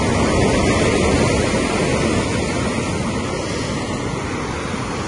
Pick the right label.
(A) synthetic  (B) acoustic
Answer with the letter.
B